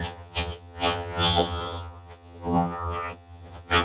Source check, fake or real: fake